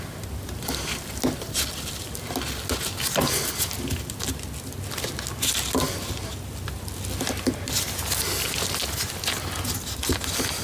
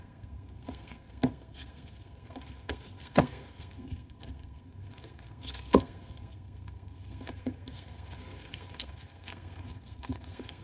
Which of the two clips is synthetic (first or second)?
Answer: second